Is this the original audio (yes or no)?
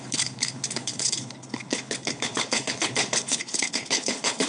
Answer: no